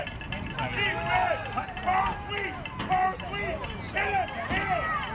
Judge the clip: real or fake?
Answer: real